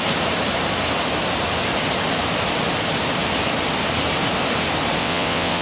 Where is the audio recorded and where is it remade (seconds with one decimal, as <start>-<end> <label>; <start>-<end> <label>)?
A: 0.0-5.0 recorded; 5.0-5.6 remade